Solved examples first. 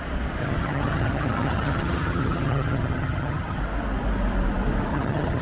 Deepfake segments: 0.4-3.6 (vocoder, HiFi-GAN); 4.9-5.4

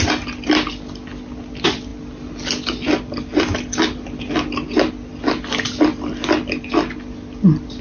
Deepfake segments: none

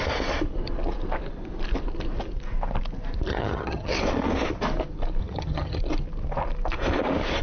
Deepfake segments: 3.3-4.0 (vocoder, HiFi-GAN); 5.2-5.8

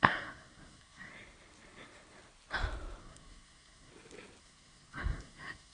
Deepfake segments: 0.0-1.1 (codec, SNAC); 3.0-3.9; 4.4-5.7

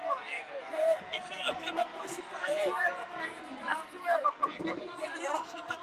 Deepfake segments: 0.0-5.8 (codec, SNAC)

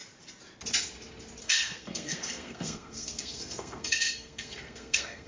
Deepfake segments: 1.4-5.3 (codec, SNAC)

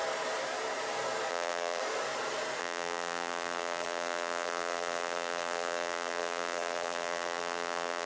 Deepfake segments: 1.3-1.8 (vocoder, BigVGAN v2); 2.6-8.1